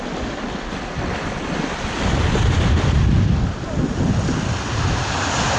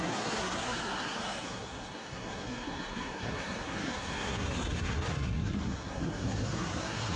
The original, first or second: first